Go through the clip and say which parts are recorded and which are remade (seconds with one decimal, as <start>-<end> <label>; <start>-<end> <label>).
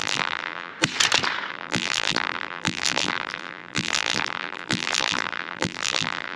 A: 0.0-0.7 remade; 0.7-1.5 recorded; 1.5-6.4 remade